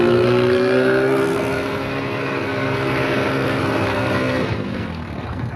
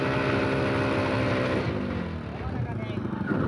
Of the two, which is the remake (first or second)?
first